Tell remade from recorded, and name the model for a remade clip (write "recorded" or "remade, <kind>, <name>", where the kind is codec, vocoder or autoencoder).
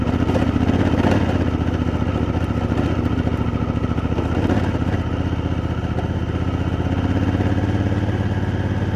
recorded